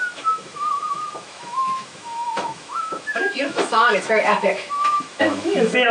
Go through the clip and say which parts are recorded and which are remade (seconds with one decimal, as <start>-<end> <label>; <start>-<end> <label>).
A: 0.0-5.9 remade